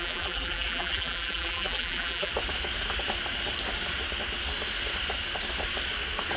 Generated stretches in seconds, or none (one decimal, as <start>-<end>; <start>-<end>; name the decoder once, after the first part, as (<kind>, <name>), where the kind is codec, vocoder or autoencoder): 0.0-2.3 (vocoder, BigVGAN v2)